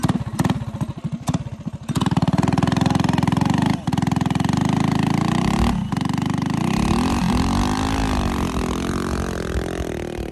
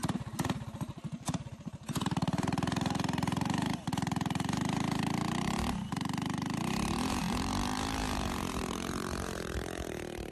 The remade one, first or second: second